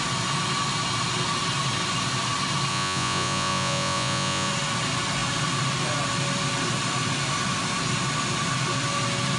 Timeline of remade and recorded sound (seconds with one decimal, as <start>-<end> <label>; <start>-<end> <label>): 0.0-2.7 recorded; 2.7-4.5 remade; 4.5-9.4 recorded